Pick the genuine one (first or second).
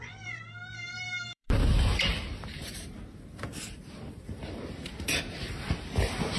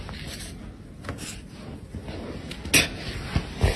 second